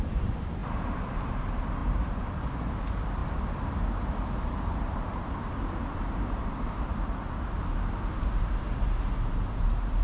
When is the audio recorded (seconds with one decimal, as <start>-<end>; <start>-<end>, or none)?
3.2-4.1